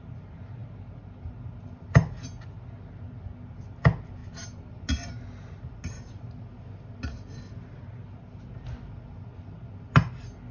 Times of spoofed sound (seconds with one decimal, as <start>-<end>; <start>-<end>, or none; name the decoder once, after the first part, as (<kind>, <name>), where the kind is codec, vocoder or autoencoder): none